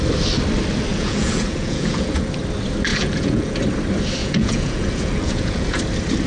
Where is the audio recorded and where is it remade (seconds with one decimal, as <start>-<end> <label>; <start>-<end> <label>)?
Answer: 0.0-0.9 recorded; 0.9-2.3 remade; 2.3-2.9 recorded; 2.9-3.6 remade; 3.6-4.2 recorded; 4.2-5.8 remade; 5.8-6.3 recorded